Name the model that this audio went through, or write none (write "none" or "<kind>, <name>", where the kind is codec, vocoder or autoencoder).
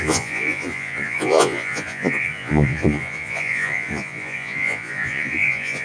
vocoder, Vocos